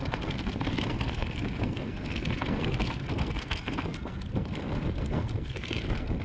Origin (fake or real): fake